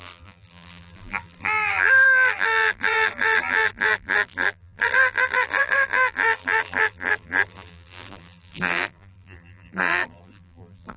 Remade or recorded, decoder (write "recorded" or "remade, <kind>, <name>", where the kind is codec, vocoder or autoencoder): remade, vocoder, BigVGAN v2